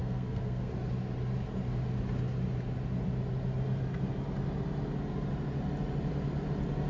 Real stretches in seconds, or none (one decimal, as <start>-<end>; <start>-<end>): 0.7-6.9